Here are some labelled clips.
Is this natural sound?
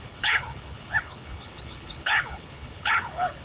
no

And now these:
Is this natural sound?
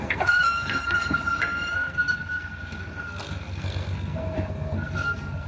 no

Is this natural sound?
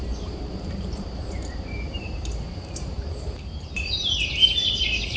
no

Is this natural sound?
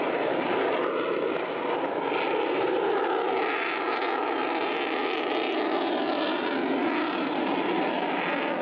yes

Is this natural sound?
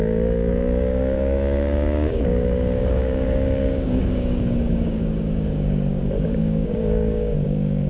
no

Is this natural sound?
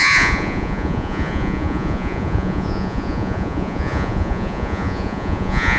no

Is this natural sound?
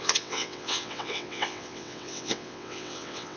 no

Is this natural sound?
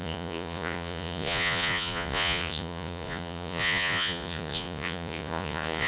no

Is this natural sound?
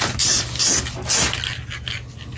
yes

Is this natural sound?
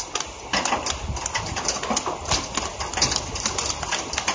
yes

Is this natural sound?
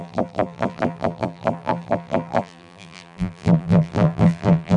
no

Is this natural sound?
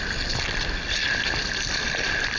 yes